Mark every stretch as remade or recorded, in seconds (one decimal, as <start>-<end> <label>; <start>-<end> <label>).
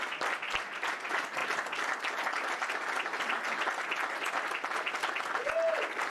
0.0-6.1 recorded